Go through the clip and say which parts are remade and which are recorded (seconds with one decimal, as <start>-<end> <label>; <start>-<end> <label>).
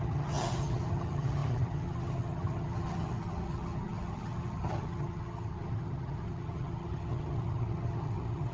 0.0-8.5 remade